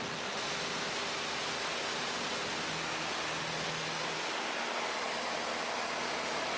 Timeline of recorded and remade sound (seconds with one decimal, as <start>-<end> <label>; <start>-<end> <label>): 0.0-6.6 recorded